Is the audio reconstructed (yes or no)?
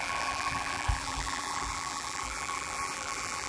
yes